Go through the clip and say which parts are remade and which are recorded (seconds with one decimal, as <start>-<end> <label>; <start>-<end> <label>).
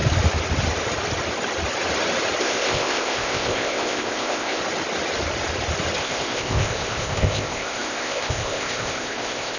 0.0-2.4 recorded; 2.4-4.6 remade; 4.6-6.0 recorded; 6.0-9.6 remade